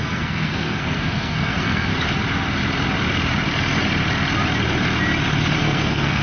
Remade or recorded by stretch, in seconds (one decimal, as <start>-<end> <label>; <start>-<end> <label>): 0.0-1.9 remade; 1.9-5.6 recorded; 5.6-6.2 remade

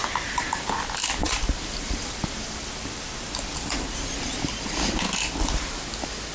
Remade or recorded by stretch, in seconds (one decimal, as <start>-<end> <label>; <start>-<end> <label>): 0.0-1.2 recorded; 1.2-5.0 remade; 5.0-6.3 recorded

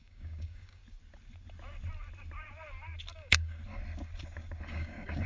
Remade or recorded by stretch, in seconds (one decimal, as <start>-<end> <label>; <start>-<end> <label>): 0.0-0.8 remade; 0.8-3.1 recorded; 3.1-3.6 remade; 3.6-4.7 recorded; 4.7-5.3 remade